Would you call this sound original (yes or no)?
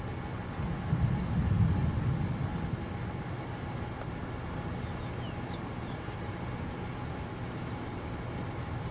yes